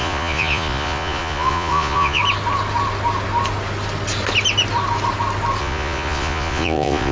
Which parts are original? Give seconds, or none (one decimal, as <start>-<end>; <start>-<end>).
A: 2.2-5.6